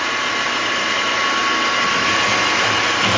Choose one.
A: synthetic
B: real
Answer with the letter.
B